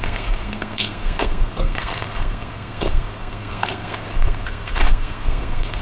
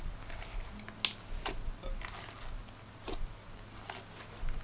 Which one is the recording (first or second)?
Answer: second